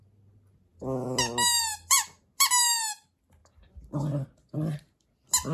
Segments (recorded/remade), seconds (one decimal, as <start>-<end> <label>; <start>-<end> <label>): 0.0-5.5 recorded